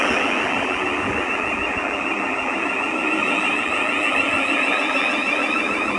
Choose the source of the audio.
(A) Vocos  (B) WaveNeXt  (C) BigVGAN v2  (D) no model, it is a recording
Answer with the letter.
C